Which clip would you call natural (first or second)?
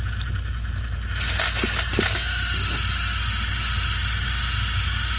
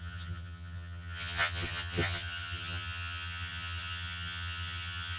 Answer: first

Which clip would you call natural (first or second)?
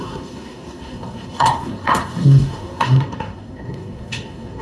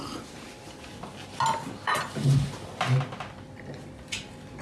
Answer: second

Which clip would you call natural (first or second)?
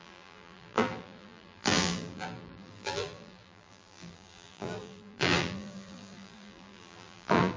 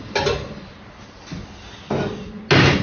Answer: second